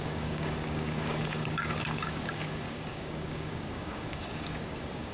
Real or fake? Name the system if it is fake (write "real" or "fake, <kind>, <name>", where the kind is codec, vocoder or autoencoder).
fake, codec, DAC